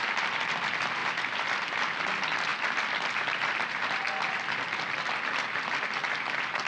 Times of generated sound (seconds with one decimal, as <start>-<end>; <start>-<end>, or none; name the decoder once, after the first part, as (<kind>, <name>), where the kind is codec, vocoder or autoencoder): none